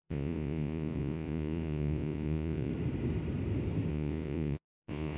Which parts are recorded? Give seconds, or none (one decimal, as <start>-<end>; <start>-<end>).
2.7-3.9